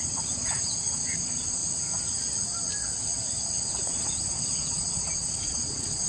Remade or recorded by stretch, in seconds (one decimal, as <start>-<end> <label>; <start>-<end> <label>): 0.0-1.6 remade; 1.6-3.8 recorded; 3.8-6.1 remade